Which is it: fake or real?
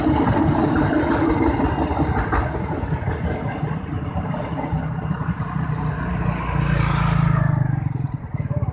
real